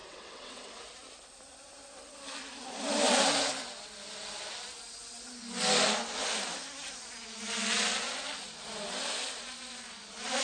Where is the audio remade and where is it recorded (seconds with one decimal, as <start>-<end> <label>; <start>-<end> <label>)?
0.0-0.7 remade; 0.7-10.4 recorded